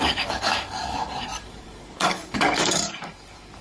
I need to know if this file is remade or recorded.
remade